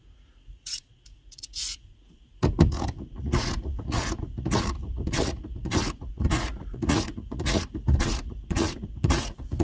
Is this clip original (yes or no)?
no